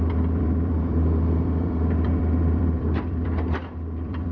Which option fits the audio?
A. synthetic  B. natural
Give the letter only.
A